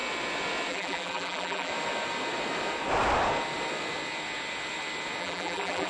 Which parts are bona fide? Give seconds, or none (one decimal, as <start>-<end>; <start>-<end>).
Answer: 0.0-0.7; 1.7-5.2